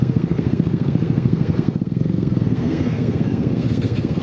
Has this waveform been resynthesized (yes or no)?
yes